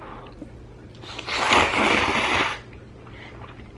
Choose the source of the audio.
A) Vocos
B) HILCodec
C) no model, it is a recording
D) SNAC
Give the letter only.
C